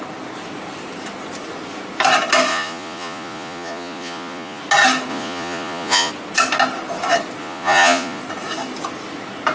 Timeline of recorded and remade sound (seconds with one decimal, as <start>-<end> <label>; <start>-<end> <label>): 0.0-2.5 recorded; 2.5-4.6 remade; 4.6-5.1 recorded; 5.1-6.1 remade; 6.1-7.4 recorded; 7.4-8.2 remade; 8.2-9.5 recorded